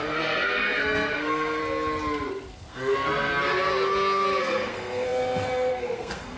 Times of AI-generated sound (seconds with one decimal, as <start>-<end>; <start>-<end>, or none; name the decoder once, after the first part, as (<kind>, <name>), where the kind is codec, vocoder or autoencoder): 0.0-1.6 (codec, SNAC); 2.5-3.3; 4.4-6.4